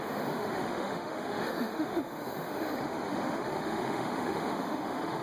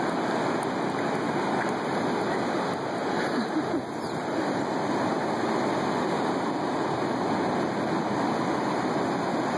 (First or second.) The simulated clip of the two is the first